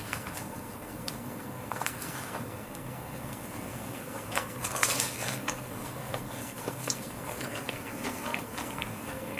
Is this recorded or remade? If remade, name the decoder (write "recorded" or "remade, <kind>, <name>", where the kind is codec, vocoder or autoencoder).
remade, codec, SNAC